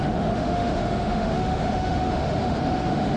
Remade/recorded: remade